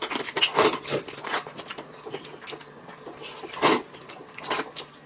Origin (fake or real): real